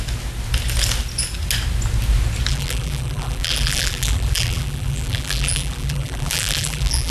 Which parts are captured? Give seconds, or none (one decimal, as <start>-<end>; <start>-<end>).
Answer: 0.0-2.5

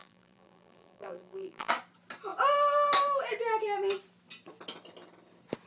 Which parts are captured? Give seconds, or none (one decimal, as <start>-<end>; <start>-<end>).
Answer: 1.7-5.7